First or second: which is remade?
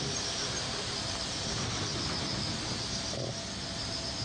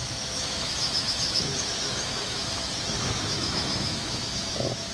second